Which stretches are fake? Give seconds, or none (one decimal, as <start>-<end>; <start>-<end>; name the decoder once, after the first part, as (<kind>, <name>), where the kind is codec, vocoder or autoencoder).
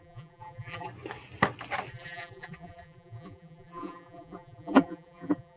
0.0-0.9 (vocoder, BigVGAN v2); 1.9-5.6